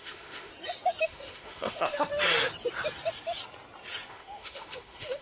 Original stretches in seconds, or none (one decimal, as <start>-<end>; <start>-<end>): 0.5-1.0; 2.1-4.1